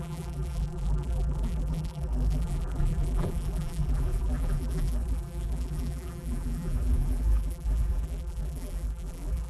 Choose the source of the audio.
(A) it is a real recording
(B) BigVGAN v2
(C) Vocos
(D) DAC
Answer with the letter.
B